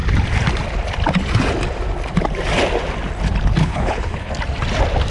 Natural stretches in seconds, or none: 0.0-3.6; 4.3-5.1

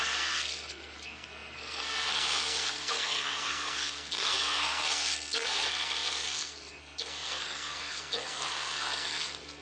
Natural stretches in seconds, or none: none

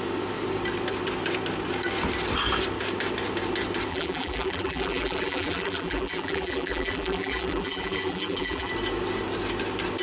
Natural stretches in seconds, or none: 0.0-3.9; 8.7-10.0

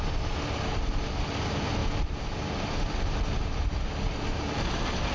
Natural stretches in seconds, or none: 0.0-5.1

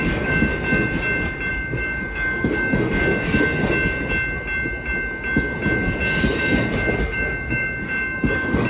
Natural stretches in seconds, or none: 0.5-1.5; 3.1-7.0

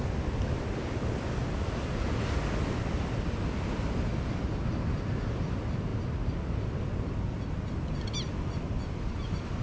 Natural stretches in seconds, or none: 0.0-9.6